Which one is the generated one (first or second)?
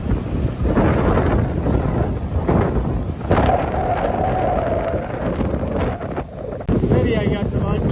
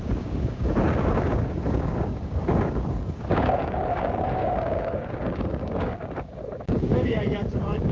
second